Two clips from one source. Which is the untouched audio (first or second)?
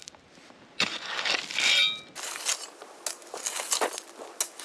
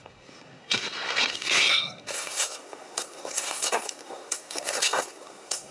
first